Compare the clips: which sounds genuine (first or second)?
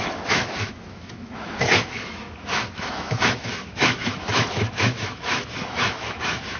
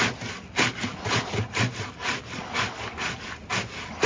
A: second